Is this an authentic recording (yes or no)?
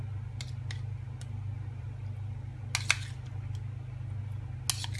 yes